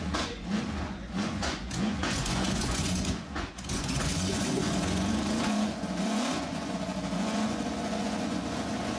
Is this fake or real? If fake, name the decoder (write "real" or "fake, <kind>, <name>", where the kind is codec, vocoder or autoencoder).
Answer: fake, vocoder, Vocos